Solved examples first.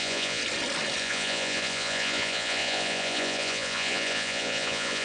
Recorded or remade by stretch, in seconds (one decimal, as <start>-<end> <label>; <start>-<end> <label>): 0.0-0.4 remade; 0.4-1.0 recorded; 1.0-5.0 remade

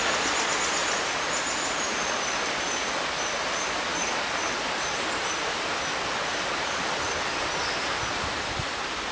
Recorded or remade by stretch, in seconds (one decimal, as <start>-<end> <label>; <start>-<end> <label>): 0.0-9.1 recorded

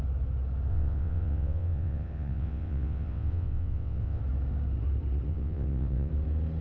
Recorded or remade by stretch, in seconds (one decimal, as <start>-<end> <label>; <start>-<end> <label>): 0.0-0.7 recorded; 0.7-4.2 remade; 4.2-5.3 recorded; 5.3-6.1 remade; 6.1-6.6 recorded

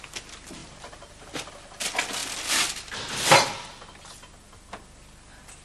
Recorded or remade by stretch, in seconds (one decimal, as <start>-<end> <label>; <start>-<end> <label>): 0.0-0.6 recorded; 0.6-1.5 remade; 1.5-2.2 recorded; 2.2-3.1 remade; 3.1-5.6 recorded